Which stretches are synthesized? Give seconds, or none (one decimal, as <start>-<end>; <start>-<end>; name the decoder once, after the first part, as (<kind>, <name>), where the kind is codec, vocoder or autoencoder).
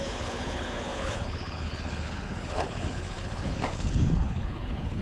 0.0-5.0 (codec, HILCodec)